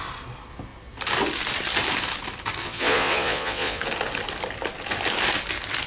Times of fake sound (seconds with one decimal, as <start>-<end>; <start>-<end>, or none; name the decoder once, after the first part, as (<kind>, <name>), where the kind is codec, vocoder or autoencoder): 2.6-3.8 (vocoder, Vocos)